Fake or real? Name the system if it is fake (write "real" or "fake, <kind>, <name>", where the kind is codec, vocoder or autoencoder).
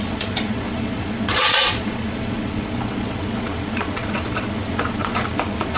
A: fake, vocoder, Vocos